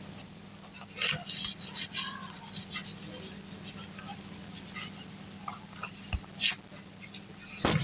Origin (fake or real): real